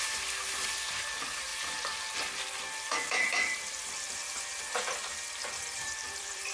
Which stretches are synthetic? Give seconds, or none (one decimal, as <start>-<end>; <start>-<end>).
0.0-6.5